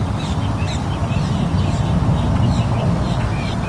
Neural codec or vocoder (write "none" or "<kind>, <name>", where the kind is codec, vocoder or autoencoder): none